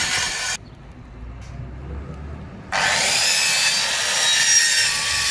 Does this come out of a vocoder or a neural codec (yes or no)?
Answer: no